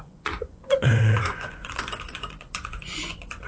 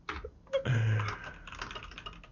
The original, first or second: second